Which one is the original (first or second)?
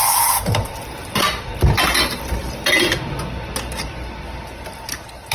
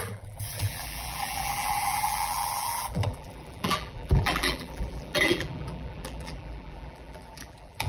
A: first